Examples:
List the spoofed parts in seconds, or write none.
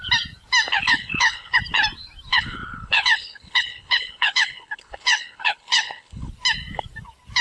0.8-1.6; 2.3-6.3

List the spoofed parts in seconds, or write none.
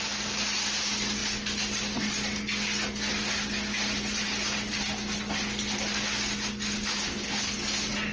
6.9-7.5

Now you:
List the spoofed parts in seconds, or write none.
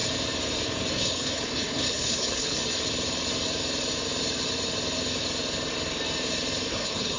0.9-2.6; 6.7-7.2